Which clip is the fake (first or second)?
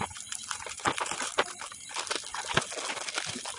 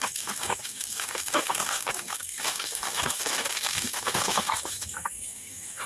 second